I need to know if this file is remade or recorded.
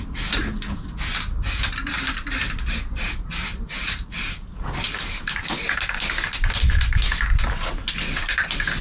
recorded